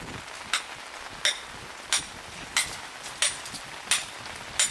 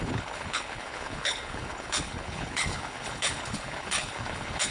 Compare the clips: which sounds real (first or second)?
first